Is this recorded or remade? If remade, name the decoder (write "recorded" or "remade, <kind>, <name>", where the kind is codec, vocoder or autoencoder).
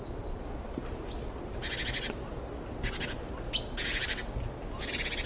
recorded